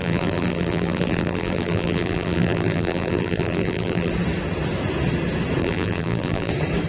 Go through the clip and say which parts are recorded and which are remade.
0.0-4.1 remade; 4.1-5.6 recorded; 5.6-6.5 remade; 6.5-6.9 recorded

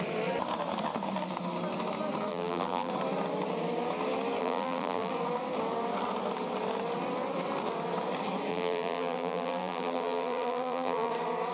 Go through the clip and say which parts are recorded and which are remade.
0.0-2.3 recorded; 2.3-2.9 remade; 2.9-4.4 recorded; 4.4-5.1 remade; 5.1-8.5 recorded; 8.5-11.1 remade; 11.1-11.5 recorded

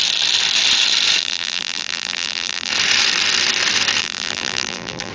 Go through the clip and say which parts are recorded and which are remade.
0.0-1.2 recorded; 1.2-2.7 remade; 2.7-4.0 recorded; 4.0-5.1 remade

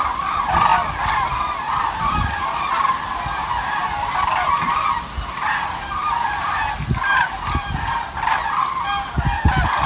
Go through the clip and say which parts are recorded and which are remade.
0.0-0.7 recorded; 0.7-1.9 remade; 1.9-9.9 recorded

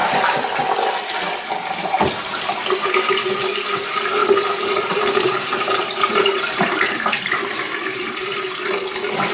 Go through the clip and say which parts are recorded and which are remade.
0.0-4.2 recorded; 4.2-8.1 remade; 8.1-9.3 recorded

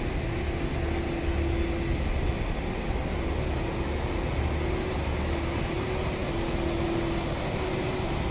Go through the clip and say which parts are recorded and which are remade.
0.0-8.3 recorded

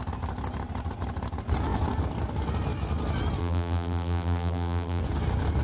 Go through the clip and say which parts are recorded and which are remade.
0.0-3.4 recorded; 3.4-5.0 remade; 5.0-5.6 recorded